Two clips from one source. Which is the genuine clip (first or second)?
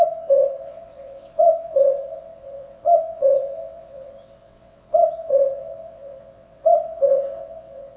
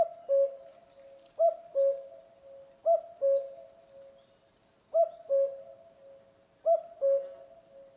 second